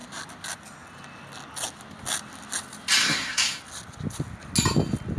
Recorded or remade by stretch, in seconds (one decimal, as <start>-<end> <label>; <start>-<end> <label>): 0.0-3.0 recorded; 3.0-3.6 remade; 3.6-5.2 recorded